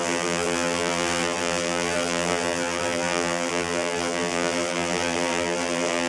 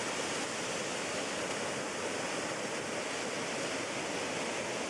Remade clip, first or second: first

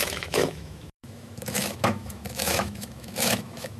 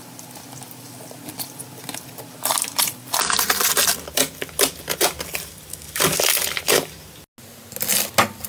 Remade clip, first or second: first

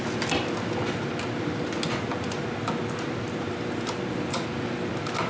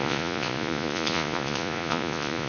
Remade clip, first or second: second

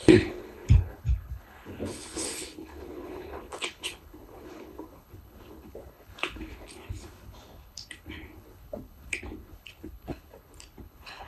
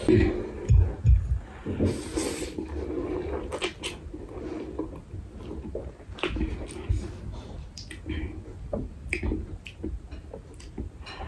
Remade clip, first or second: first